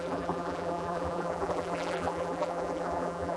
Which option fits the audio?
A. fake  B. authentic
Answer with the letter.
A